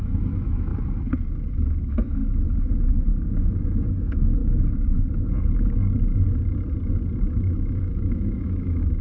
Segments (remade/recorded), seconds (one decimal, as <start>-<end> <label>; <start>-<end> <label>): 0.0-0.7 remade; 0.7-1.5 recorded; 1.5-2.2 remade; 2.2-3.1 recorded; 3.1-4.4 remade; 4.4-7.2 recorded; 7.2-9.0 remade